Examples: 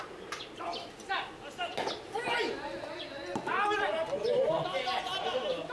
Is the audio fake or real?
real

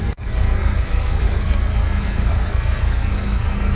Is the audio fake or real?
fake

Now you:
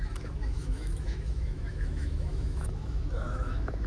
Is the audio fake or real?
fake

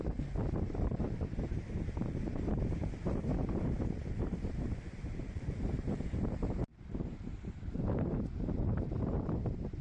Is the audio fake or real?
fake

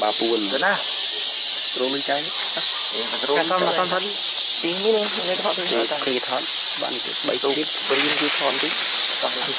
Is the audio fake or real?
real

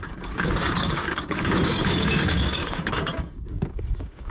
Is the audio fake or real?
fake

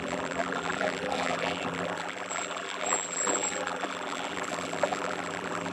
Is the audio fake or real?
fake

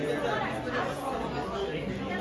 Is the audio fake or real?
real